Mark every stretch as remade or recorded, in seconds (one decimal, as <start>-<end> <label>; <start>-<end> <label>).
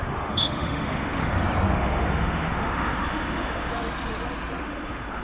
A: 0.0-1.2 remade; 1.2-1.7 recorded; 1.7-3.7 remade; 3.7-4.6 recorded; 4.6-5.2 remade